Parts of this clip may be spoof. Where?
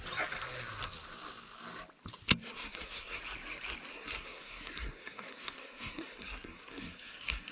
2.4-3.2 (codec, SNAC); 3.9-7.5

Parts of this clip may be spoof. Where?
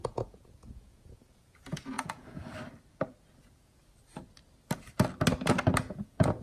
0.0-2.4 (vocoder, Vocos); 3.4-3.8; 5.8-6.4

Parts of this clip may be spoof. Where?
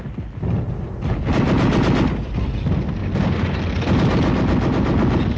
none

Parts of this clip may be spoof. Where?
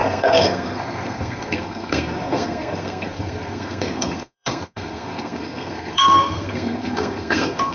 0.0-7.7 (codec, SNAC)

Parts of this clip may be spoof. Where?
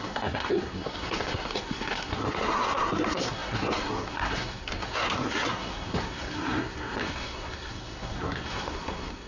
0.0-9.3 (codec, SNAC)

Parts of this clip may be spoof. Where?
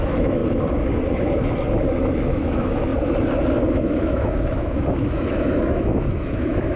0.0-0.4 (autoencoder, DAC-VAE); 2.0-2.9; 3.7-6.8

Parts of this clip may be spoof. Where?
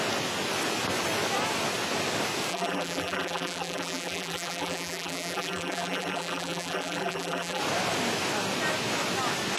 2.5-7.6 (vocoder, BigVGAN v2)